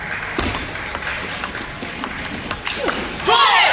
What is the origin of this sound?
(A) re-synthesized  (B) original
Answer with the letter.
B